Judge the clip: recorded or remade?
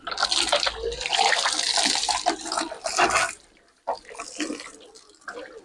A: recorded